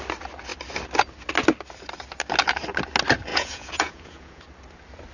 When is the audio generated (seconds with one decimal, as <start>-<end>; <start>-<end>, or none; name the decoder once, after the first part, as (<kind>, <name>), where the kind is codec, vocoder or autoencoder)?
3.3-4.4 (vocoder, Vocos)